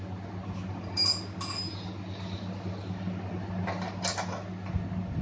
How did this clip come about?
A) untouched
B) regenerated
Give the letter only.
A